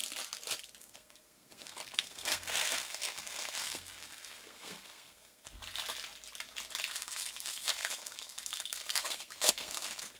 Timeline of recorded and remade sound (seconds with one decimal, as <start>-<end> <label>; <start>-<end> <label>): 0.0-0.8 recorded; 0.8-5.6 remade; 5.6-6.9 recorded; 6.9-10.2 remade